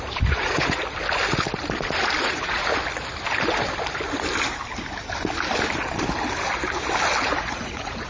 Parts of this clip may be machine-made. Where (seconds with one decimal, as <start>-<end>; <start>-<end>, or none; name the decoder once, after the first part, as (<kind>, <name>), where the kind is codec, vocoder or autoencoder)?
0.0-0.8 (vocoder, Vocos); 2.2-2.7; 7.2-8.1